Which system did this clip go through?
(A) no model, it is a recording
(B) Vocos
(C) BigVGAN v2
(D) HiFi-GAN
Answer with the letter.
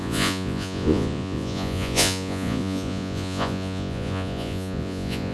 B